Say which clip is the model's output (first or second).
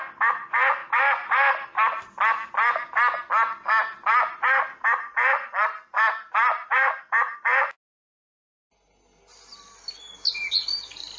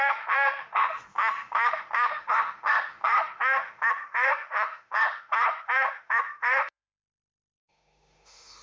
second